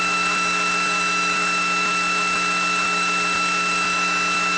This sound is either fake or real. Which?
fake